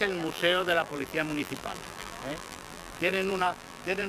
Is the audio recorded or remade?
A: remade